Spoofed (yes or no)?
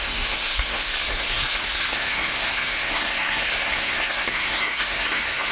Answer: yes